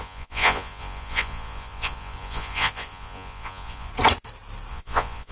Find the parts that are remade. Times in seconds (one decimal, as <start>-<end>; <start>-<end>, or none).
0.0-3.9; 4.7-5.3